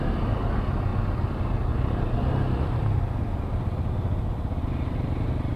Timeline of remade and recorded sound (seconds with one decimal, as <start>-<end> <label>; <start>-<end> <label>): 0.0-5.6 recorded